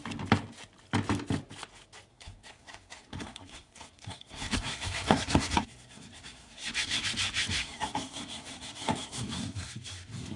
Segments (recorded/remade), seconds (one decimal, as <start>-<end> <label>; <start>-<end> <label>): 0.0-2.1 recorded; 2.1-7.0 remade; 7.0-7.4 recorded; 7.4-10.4 remade

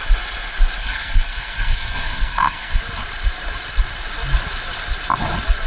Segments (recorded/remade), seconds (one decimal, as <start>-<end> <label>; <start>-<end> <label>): 0.0-0.8 recorded; 0.8-2.8 remade; 2.8-5.7 recorded

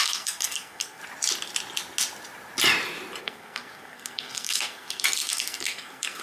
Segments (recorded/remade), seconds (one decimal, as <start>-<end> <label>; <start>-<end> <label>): 0.0-1.0 remade; 1.0-3.2 recorded; 3.2-6.2 remade

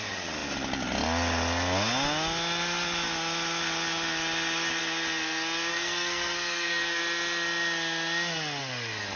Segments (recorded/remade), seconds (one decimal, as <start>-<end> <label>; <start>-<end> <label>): 0.0-5.7 recorded; 5.7-7.0 remade; 7.0-9.2 recorded

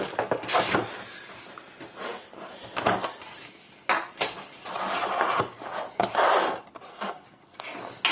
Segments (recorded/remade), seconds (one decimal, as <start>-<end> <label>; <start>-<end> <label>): 0.0-6.9 recorded; 6.9-7.6 remade; 7.6-8.1 recorded

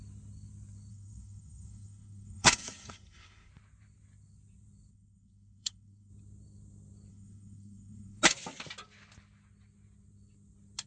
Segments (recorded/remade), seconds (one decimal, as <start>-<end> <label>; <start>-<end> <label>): 0.0-0.9 recorded; 0.9-3.5 remade; 3.5-4.9 recorded; 4.9-6.1 remade; 6.1-7.1 recorded; 7.1-8.2 remade; 8.2-10.9 recorded

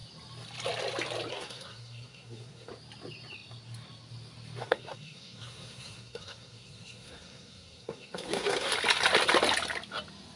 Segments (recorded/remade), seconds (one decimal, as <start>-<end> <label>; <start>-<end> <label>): 0.0-1.3 recorded; 1.3-2.7 remade; 2.7-4.6 recorded; 4.6-8.7 remade; 8.7-10.4 recorded